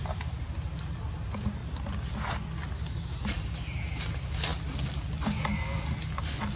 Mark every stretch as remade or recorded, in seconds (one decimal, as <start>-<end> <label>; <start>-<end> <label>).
0.0-6.6 recorded